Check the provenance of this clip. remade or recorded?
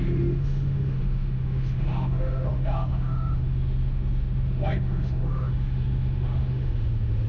remade